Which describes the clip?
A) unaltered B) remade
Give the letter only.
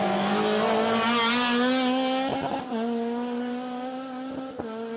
A